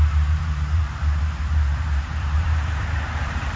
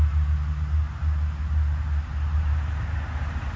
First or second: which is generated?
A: first